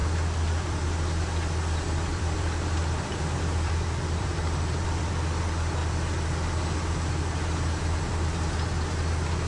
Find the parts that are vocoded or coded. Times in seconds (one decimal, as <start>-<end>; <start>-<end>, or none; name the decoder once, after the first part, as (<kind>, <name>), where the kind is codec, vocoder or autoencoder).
0.0-0.8 (vocoder, BigVGAN v2); 2.1-5.1